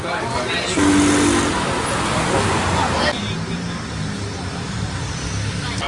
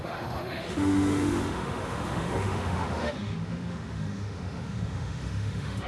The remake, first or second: second